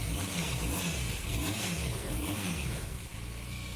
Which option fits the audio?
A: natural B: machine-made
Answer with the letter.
B